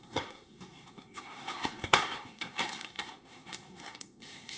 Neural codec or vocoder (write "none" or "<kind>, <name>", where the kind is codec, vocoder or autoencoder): codec, SNAC